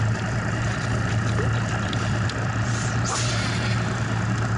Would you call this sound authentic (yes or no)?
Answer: no